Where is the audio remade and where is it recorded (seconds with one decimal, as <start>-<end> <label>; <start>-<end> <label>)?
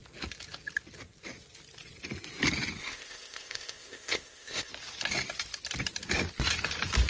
0.0-2.8 recorded; 2.8-4.7 remade; 4.7-7.1 recorded